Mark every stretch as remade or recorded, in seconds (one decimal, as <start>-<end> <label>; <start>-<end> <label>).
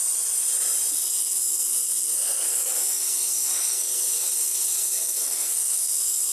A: 0.0-0.9 recorded; 0.9-6.3 remade